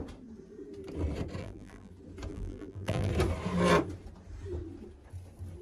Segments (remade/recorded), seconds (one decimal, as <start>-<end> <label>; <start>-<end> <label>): 0.0-1.4 recorded; 1.4-1.9 remade; 1.9-2.3 recorded; 2.3-3.1 remade; 3.1-5.6 recorded